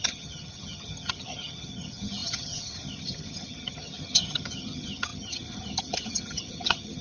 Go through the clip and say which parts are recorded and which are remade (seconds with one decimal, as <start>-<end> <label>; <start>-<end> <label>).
0.0-7.0 remade